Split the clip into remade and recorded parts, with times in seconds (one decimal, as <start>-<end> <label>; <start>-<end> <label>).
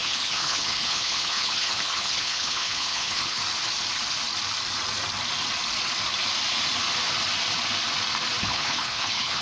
0.0-3.4 remade; 3.4-8.4 recorded; 8.4-9.4 remade